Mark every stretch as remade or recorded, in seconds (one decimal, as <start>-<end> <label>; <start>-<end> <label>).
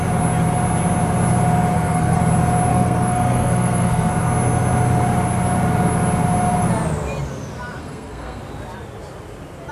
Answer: 0.0-1.7 recorded; 1.7-2.2 remade; 2.2-2.7 recorded; 2.7-4.1 remade; 4.1-7.8 recorded; 7.8-8.4 remade; 8.4-9.7 recorded